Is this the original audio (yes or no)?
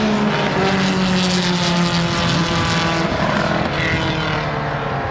yes